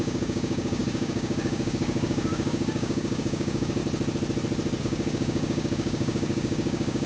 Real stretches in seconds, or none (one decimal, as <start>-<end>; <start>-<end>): 3.8-4.8